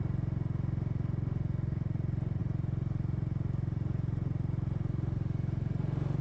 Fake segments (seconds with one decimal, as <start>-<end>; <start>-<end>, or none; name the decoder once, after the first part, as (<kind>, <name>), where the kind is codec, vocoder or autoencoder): none